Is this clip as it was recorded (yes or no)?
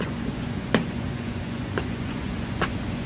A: no